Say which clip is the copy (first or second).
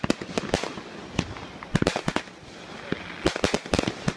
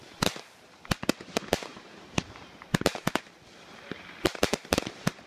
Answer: second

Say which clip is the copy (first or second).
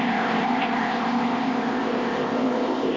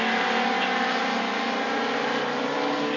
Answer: first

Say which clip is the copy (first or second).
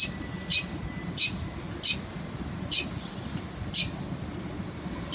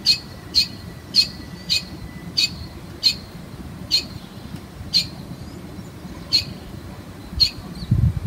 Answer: second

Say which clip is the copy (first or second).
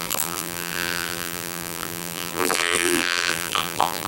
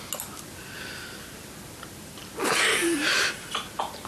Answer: first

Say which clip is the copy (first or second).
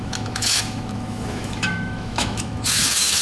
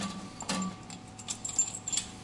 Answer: first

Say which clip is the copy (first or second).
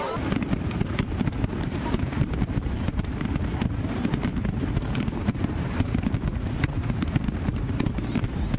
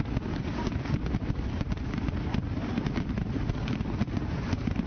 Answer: first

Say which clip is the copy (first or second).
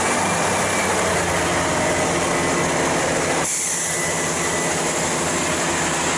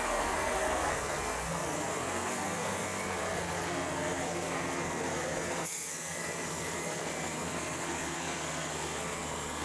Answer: second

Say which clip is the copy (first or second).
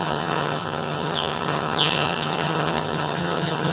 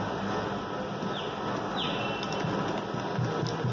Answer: first